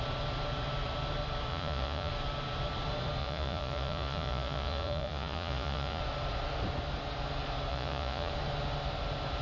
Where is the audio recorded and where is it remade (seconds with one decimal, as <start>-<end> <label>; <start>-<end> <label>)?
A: 0.0-1.5 recorded; 1.5-2.1 remade; 2.1-3.2 recorded; 3.2-6.0 remade; 6.0-7.7 recorded; 7.7-8.3 remade; 8.3-9.4 recorded